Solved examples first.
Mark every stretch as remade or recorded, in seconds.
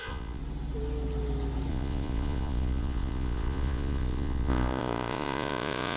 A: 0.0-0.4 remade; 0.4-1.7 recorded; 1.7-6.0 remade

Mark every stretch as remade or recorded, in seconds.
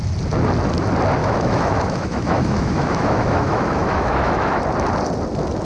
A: 0.0-1.2 recorded; 1.2-4.6 remade; 4.6-5.6 recorded